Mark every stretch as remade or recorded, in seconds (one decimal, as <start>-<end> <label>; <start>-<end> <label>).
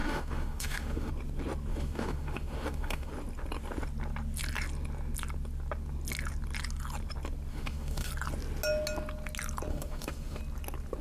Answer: 0.0-1.1 remade; 1.1-1.7 recorded; 1.7-3.1 remade; 3.1-7.5 recorded; 7.5-8.1 remade; 8.1-9.7 recorded; 9.7-10.4 remade; 10.4-11.0 recorded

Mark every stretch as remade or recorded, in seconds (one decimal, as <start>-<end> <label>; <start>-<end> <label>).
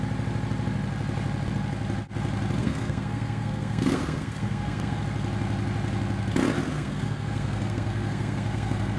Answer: 0.0-2.6 recorded; 2.6-5.0 remade; 5.0-6.7 recorded; 6.7-9.0 remade